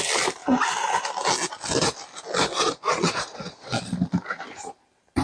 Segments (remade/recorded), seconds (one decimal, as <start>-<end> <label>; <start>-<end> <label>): 0.0-2.5 recorded; 2.5-3.8 remade; 3.8-5.2 recorded